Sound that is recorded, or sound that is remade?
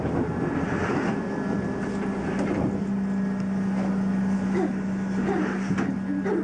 recorded